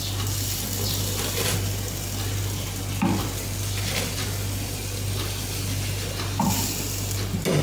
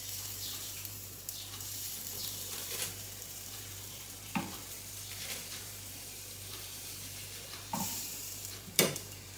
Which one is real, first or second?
first